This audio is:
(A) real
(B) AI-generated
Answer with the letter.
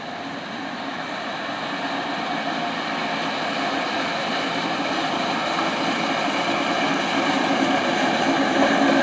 A